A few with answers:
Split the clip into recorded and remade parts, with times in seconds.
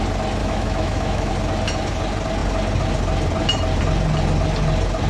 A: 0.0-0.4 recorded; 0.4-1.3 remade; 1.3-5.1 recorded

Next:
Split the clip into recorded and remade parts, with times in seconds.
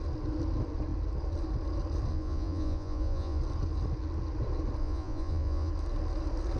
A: 0.0-2.1 recorded; 2.1-3.4 remade; 3.4-4.8 recorded; 4.8-5.7 remade; 5.7-6.6 recorded